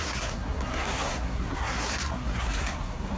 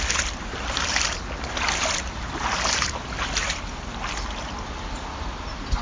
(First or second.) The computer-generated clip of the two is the first